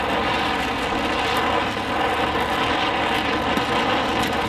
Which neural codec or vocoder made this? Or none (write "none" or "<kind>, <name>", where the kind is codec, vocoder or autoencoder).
none